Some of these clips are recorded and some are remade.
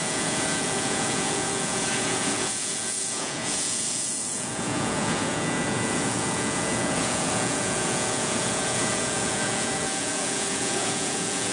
remade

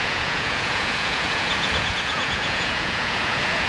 remade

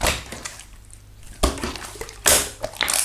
recorded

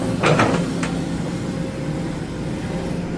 recorded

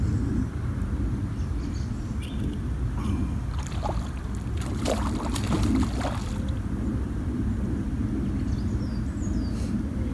recorded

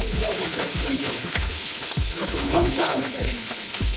remade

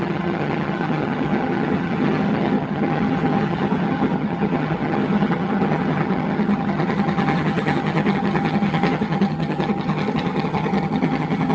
remade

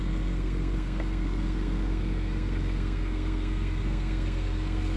remade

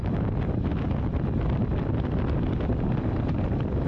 remade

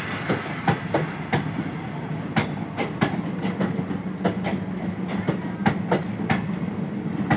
recorded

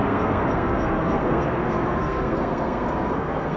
remade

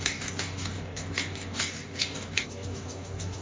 remade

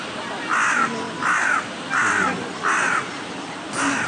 recorded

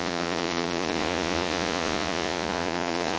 remade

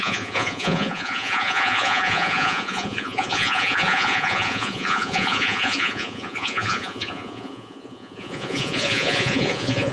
remade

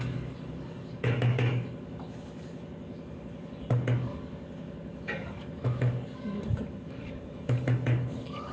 remade